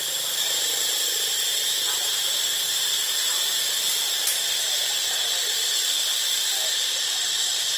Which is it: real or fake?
fake